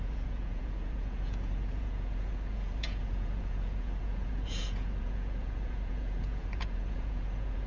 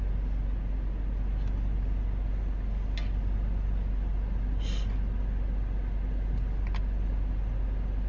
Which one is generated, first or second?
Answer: first